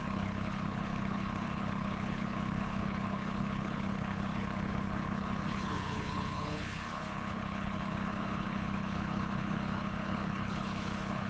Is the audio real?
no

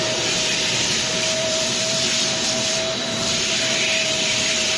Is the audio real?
no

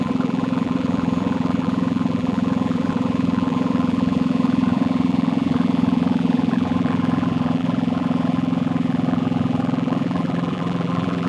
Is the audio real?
no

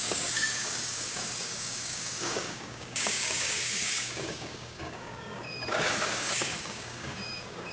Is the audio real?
no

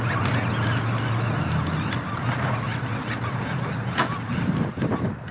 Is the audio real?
yes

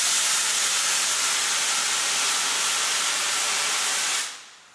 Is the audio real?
yes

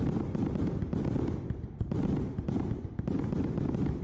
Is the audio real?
yes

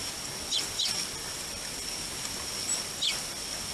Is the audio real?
yes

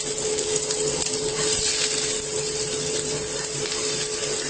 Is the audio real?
no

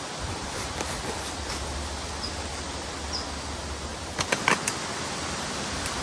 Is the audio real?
yes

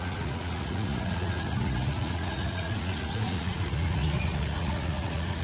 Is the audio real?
no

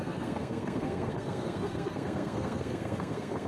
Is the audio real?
no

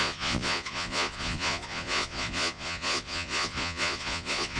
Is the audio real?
no